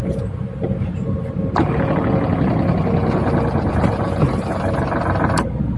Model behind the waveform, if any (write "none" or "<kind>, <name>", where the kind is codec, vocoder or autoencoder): none